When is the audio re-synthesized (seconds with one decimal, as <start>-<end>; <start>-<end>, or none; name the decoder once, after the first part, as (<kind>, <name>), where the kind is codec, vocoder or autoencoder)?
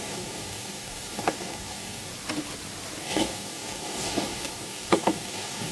0.0-2.1 (codec, DAC); 3.0-5.7